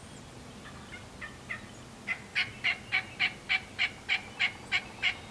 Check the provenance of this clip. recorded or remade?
recorded